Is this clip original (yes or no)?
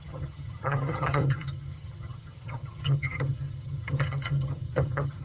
no